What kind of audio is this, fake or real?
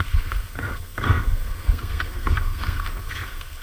fake